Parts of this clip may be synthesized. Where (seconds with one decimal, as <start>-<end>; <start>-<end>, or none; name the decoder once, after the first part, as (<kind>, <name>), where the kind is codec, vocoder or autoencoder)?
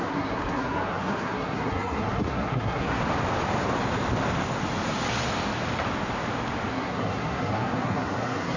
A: 0.0-3.0 (codec, SNAC); 6.7-8.6